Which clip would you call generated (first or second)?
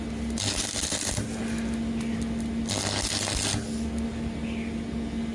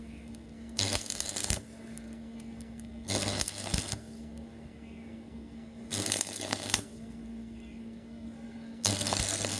second